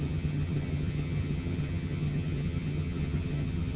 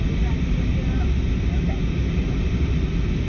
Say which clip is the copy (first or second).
first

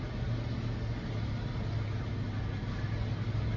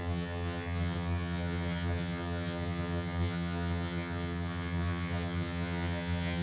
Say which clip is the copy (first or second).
second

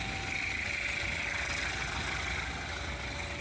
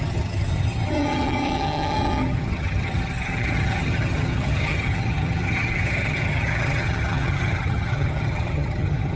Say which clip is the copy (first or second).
second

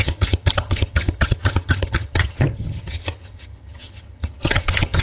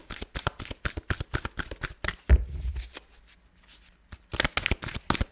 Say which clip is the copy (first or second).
first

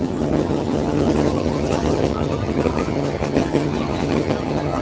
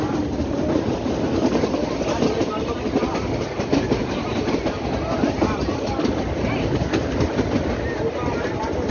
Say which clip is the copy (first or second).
first